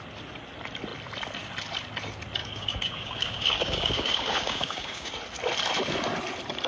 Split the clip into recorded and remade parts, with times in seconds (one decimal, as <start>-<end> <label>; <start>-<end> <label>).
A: 0.0-2.4 recorded; 2.4-5.1 remade; 5.1-6.7 recorded

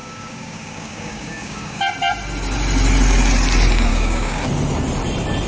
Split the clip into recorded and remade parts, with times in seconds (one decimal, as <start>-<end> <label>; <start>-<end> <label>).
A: 0.0-1.8 remade; 1.8-3.9 recorded; 3.9-4.4 remade; 4.4-5.5 recorded

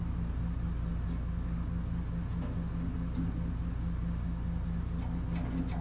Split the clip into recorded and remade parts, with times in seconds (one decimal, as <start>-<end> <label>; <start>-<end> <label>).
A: 0.0-5.8 recorded

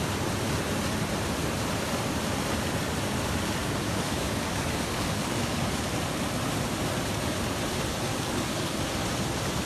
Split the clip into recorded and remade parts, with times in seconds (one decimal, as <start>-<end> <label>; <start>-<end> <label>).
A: 0.0-3.6 recorded; 3.6-5.9 remade; 5.9-8.1 recorded; 8.1-8.8 remade; 8.8-9.7 recorded